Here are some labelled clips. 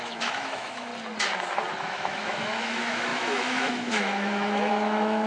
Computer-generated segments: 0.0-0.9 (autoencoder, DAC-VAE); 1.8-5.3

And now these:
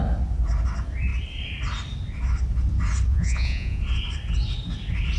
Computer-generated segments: 3.1-3.8 (vocoder, Vocos)

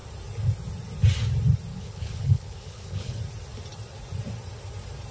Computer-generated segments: 1.7-3.2 (codec, HILCodec)